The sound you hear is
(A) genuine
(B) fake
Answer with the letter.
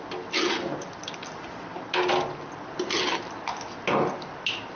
A